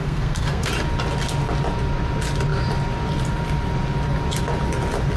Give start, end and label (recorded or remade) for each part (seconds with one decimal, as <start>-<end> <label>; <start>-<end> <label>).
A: 0.0-0.7 remade; 0.7-5.2 recorded